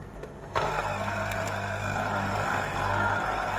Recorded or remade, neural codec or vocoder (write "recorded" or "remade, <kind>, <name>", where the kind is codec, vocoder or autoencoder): remade, codec, SNAC